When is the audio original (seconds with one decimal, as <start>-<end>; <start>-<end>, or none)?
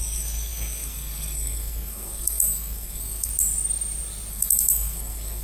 3.3-4.3